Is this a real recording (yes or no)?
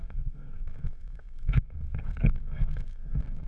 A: no